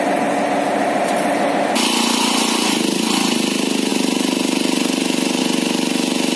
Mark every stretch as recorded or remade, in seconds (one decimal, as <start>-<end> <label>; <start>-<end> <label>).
0.0-3.9 recorded; 3.9-5.4 remade; 5.4-6.4 recorded